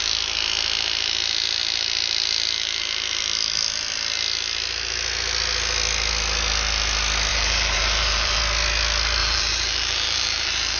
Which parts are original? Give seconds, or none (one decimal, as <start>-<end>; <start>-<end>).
0.0-7.3; 8.4-9.2